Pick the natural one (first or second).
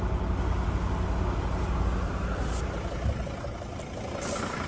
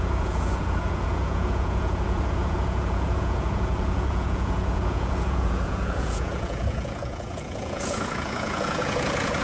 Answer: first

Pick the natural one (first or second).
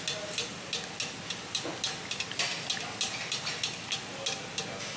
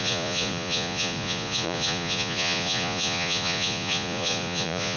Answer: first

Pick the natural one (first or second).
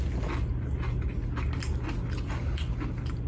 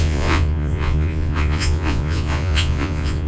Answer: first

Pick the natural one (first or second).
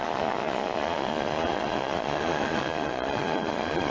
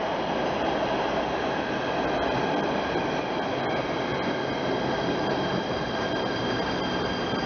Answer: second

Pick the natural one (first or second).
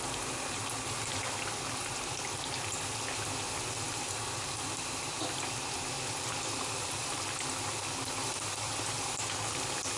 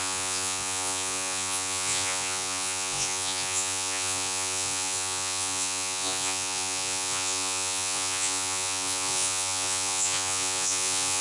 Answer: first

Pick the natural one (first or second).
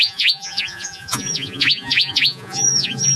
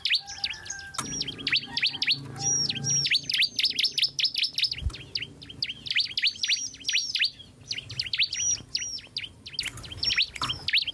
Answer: second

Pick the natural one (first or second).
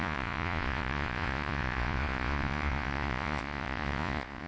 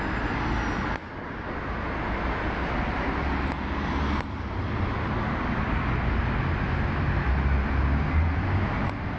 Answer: second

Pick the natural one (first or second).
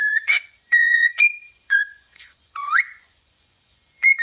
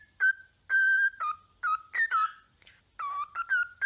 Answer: second